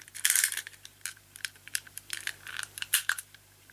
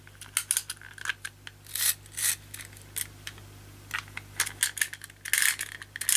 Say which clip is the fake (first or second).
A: first